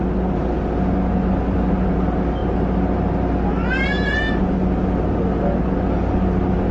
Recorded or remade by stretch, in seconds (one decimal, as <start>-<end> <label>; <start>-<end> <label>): 0.0-6.7 recorded

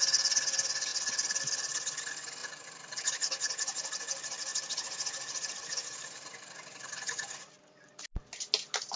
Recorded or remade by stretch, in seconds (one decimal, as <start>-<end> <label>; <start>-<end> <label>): 0.0-2.4 recorded; 2.4-3.0 remade; 3.0-4.5 recorded; 4.5-8.0 remade; 8.0-9.0 recorded

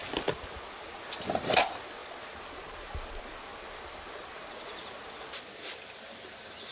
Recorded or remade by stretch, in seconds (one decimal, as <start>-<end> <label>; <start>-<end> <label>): 0.0-6.7 recorded

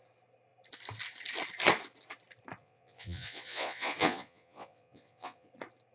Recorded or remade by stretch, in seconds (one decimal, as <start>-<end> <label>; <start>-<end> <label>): 0.0-2.6 recorded; 2.6-5.5 remade; 5.5-5.9 recorded

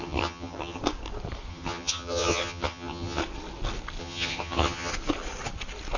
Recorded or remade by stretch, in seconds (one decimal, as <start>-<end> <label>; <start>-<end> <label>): 0.0-0.8 remade; 0.8-1.5 recorded; 1.5-3.2 remade; 3.2-4.0 recorded; 4.0-4.9 remade; 4.9-6.0 recorded

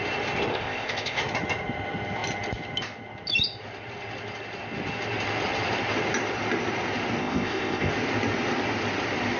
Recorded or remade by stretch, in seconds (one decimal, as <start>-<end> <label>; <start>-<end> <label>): 0.0-0.5 recorded; 0.5-1.2 remade; 1.2-7.2 recorded; 7.2-7.9 remade; 7.9-9.4 recorded

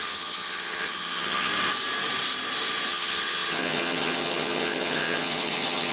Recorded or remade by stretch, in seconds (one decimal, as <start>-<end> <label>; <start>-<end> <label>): 0.0-1.5 remade; 1.5-2.9 recorded; 2.9-5.9 remade